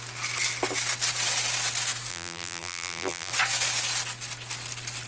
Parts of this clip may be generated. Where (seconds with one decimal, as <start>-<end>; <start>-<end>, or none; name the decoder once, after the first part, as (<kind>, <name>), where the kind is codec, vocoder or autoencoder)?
2.1-3.3 (vocoder, BigVGAN v2)